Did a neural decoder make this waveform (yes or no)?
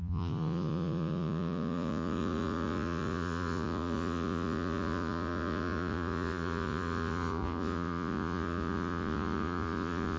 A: yes